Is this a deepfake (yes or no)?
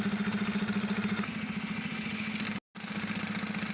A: no